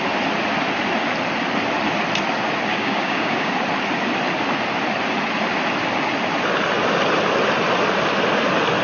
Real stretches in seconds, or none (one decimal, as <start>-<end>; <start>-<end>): 0.0-2.7; 3.5-8.8